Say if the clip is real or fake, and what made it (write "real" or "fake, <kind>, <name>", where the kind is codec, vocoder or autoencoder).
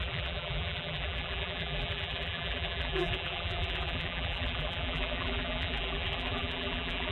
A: fake, vocoder, BigVGAN v2